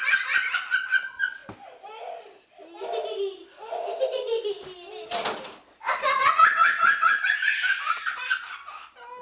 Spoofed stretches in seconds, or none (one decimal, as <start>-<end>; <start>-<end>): 6.2-7.2